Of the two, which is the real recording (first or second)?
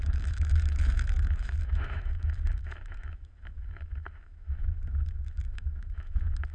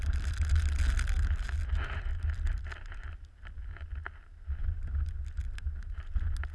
second